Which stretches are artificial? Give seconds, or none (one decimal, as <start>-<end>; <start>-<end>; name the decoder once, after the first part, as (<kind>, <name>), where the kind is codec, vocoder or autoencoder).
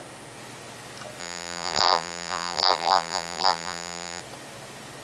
1.2-4.2 (vocoder, BigVGAN v2)